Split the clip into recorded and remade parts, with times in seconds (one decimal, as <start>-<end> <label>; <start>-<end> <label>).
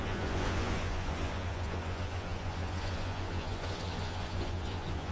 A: 0.0-5.1 remade